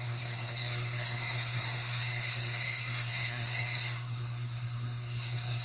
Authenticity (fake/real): fake